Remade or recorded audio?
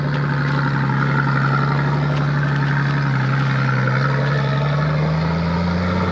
recorded